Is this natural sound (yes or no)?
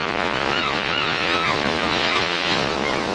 no